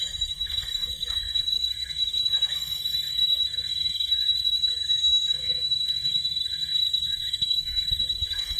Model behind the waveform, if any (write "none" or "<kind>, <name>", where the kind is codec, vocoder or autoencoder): codec, SNAC